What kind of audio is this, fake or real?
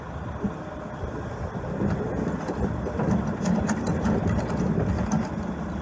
real